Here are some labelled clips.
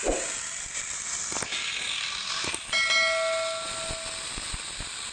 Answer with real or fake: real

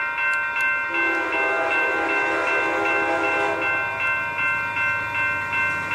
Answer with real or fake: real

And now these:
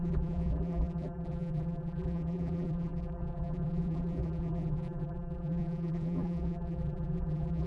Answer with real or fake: fake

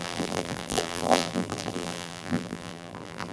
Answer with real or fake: fake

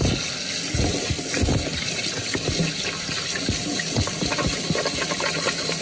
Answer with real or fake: real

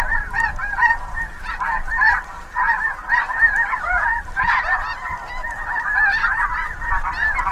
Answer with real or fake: fake